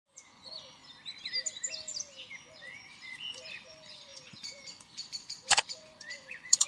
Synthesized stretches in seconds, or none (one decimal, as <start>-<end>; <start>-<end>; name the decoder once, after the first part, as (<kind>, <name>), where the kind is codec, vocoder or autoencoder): 0.0-0.8 (vocoder, Vocos); 2.3-6.7